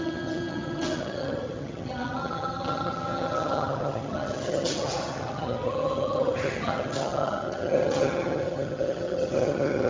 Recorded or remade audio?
remade